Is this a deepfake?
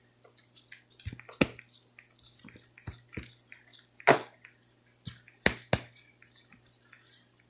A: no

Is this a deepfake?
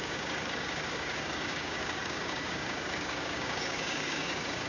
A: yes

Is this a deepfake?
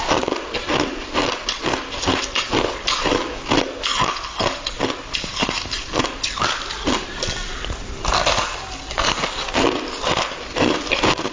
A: no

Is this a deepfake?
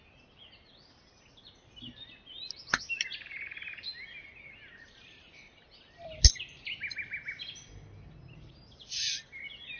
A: no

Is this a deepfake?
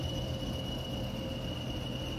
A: no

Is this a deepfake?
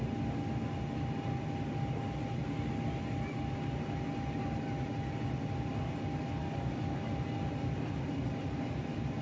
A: no